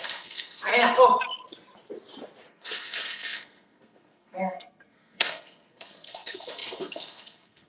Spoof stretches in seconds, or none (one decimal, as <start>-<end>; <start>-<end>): 0.0-0.7; 2.5-7.7